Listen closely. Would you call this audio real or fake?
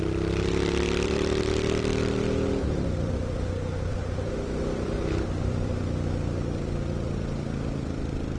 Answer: fake